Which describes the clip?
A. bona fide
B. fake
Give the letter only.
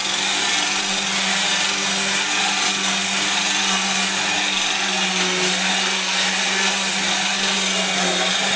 A